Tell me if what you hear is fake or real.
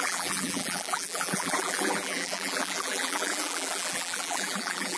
fake